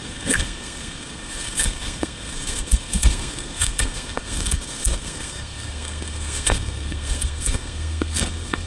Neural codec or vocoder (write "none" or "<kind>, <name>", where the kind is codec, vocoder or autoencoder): codec, SNAC